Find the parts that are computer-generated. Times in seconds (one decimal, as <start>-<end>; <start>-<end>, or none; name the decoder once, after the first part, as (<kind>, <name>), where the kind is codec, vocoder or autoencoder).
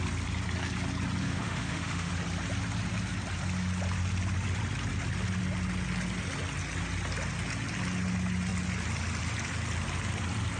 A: 1.2-2.1 (autoencoder, DAC-VAE)